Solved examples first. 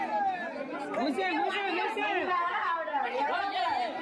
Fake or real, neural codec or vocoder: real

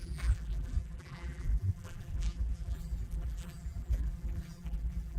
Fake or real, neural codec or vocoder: fake, vocoder, BigVGAN v2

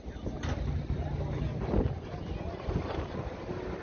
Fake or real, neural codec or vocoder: real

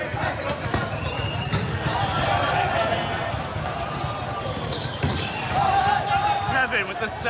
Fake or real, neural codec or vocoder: real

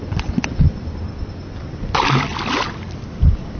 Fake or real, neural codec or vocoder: real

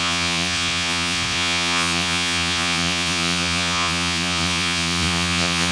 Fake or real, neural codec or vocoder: fake, vocoder, Vocos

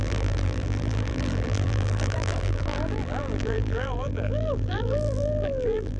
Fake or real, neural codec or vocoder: fake, vocoder, BigVGAN v2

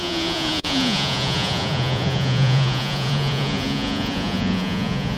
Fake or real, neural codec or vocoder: fake, vocoder, Vocos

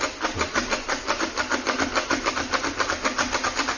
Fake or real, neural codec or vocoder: real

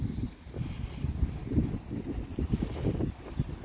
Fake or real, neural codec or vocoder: real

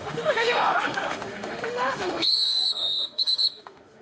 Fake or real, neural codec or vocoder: fake, autoencoder, DAC-VAE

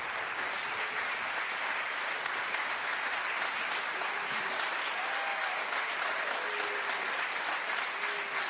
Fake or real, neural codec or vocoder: real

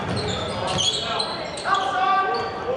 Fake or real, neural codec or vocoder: real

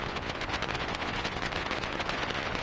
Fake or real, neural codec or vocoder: fake, vocoder, Vocos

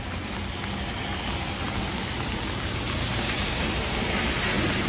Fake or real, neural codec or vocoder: real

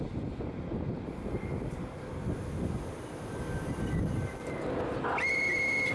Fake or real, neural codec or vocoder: real